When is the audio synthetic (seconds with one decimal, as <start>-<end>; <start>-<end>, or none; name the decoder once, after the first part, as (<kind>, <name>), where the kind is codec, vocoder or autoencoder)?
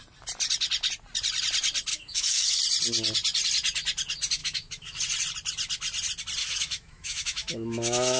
1.9-2.6 (autoencoder, DAC-VAE); 4.4-5.0; 6.4-8.2